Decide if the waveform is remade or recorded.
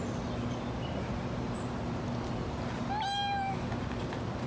recorded